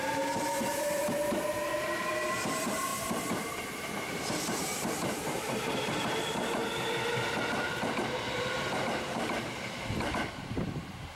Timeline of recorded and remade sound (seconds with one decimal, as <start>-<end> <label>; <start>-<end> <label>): 0.0-6.6 remade; 6.6-8.3 recorded; 8.3-11.2 remade